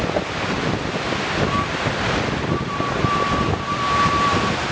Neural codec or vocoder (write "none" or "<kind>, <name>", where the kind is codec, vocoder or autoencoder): none